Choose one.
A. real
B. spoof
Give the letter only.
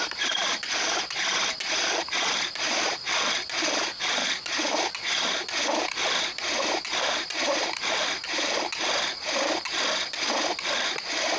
A